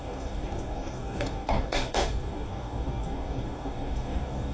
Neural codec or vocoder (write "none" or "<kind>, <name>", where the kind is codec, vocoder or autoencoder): codec, DAC